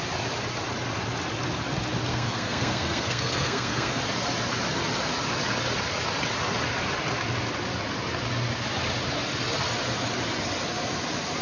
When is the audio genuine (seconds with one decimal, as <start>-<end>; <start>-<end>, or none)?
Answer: 0.0-2.1; 4.0-11.4